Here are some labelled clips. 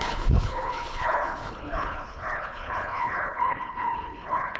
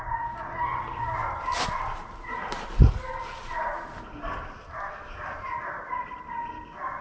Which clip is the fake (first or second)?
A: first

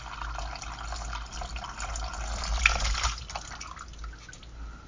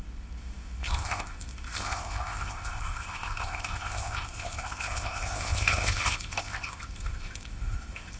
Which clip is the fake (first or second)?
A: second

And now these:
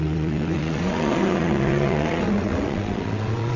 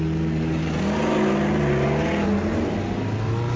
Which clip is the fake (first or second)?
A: first